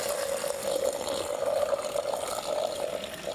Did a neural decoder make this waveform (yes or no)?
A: no